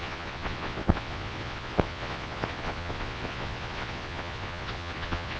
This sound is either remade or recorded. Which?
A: remade